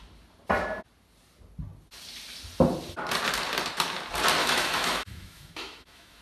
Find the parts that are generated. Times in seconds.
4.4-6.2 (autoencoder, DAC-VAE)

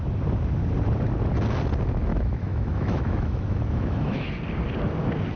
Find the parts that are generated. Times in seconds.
2.1-4.3 (autoencoder, DAC-VAE)

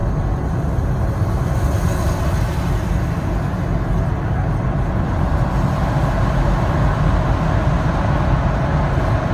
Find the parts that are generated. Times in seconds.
none

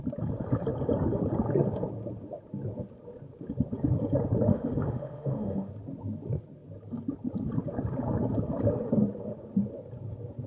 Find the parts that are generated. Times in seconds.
4.5-5.7 (autoencoder, DAC-VAE)

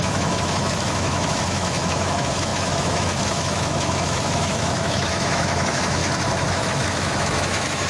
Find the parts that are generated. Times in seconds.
0.0-6.0 (autoencoder, DAC-VAE); 6.5-7.9

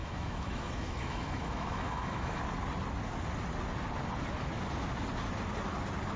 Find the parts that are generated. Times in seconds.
0.0-2.4 (autoencoder, DAC-VAE)